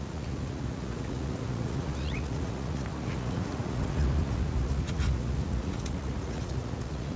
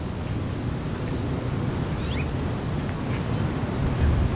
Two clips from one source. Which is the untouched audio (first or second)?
second